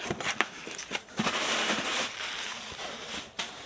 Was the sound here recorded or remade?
remade